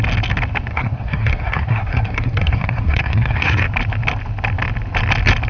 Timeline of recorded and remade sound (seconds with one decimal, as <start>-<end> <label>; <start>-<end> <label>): 0.0-0.7 recorded; 0.7-3.6 remade; 3.6-5.5 recorded